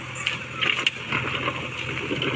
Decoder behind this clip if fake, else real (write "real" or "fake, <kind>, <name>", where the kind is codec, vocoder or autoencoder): real